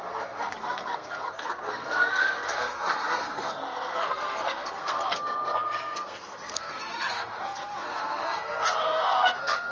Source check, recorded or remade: remade